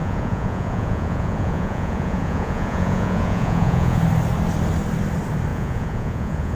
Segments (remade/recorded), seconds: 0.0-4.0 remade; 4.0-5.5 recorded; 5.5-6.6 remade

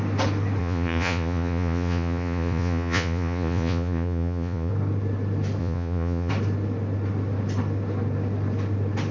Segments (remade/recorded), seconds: 0.0-0.6 recorded; 0.6-4.7 remade; 4.7-5.6 recorded; 5.6-6.3 remade; 6.3-9.1 recorded

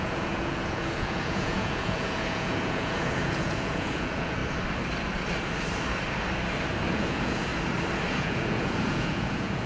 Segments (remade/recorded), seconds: 0.0-4.4 remade; 4.4-6.9 recorded; 6.9-7.5 remade; 7.5-8.1 recorded; 8.1-9.7 remade

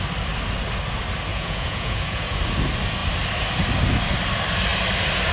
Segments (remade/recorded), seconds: 0.0-1.3 recorded; 1.3-2.4 remade; 2.4-5.3 recorded